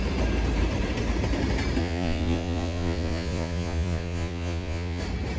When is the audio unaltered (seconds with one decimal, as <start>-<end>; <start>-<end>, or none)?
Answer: 0.0-1.8; 5.0-5.4